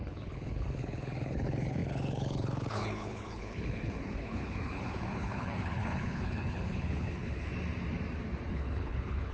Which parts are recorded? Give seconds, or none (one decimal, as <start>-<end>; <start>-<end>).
7.5-8.5

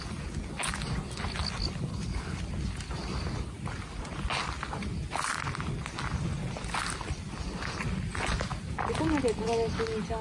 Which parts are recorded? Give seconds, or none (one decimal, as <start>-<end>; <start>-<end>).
0.0-1.9; 2.4-10.2

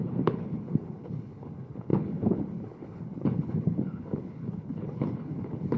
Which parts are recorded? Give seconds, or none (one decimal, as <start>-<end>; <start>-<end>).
none